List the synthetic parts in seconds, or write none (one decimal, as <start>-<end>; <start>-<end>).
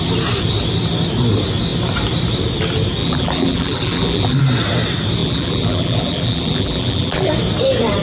3.0-4.4; 5.2-7.3